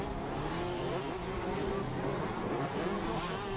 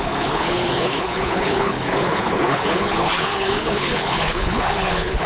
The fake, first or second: second